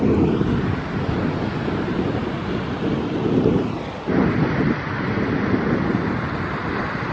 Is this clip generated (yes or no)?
no